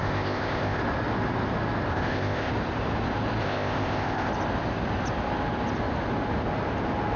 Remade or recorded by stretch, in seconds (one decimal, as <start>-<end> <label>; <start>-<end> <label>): 0.0-0.8 remade; 0.8-1.9 recorded; 1.9-2.5 remade; 2.5-3.4 recorded; 3.4-4.3 remade; 4.3-7.2 recorded